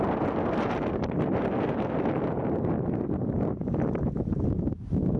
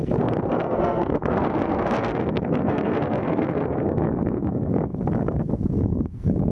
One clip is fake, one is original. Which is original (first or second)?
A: first